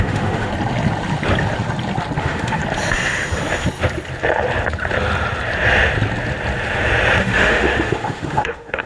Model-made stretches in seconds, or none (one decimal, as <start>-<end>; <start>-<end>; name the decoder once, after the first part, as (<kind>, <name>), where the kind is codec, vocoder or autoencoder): 0.0-0.5 (autoencoder, DAC-VAE); 2.2-2.6; 7.2-8.9